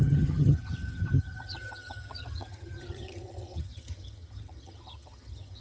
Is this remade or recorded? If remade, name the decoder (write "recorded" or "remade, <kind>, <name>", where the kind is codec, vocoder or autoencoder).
remade, vocoder, HiFi-GAN